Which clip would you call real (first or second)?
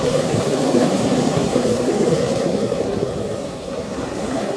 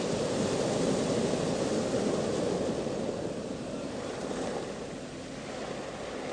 second